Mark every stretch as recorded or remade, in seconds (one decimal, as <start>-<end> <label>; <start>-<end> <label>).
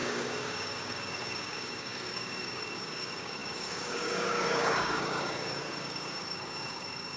0.0-7.2 remade